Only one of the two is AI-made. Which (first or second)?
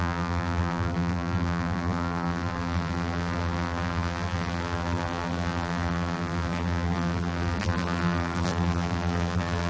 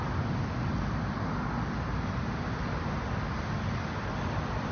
first